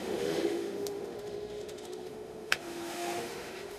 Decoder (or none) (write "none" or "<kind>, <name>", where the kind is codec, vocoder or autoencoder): autoencoder, DAC-VAE